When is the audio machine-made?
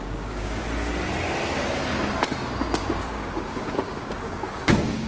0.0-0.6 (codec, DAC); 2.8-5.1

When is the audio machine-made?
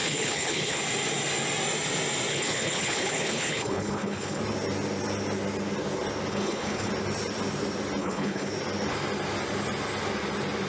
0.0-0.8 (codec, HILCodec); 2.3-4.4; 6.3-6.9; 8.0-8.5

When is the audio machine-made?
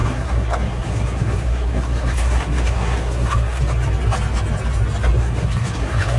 0.0-3.6 (codec, SNAC); 5.2-6.2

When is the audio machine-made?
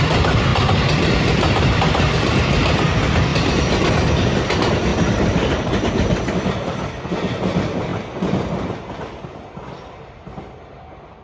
3.3-3.9 (vocoder, BigVGAN v2); 4.9-5.5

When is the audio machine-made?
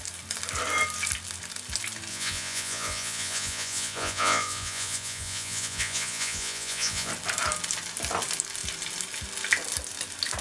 2.1-7.1 (vocoder, Vocos)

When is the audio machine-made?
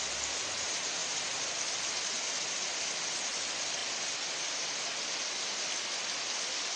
none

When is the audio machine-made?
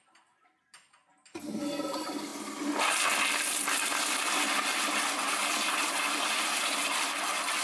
none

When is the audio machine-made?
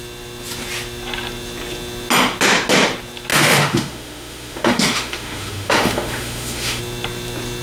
3.3-6.8 (autoencoder, DAC-VAE)